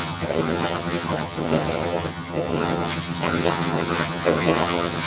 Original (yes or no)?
no